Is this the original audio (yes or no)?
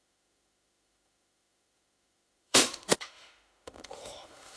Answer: no